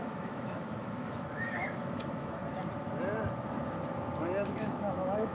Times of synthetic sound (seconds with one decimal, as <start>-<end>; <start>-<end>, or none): 0.0-2.4; 4.5-5.3